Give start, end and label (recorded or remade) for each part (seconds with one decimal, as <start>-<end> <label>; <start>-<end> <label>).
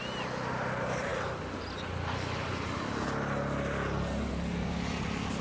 0.0-5.4 recorded